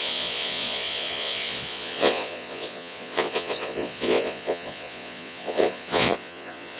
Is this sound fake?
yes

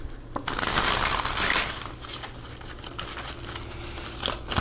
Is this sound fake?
no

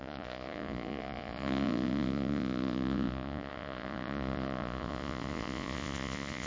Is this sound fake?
yes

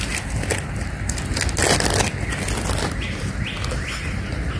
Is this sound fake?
no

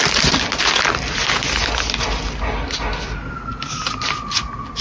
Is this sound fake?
no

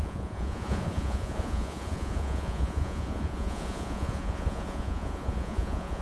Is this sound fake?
yes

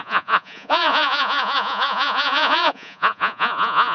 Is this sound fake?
yes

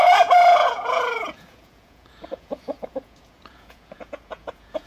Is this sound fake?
yes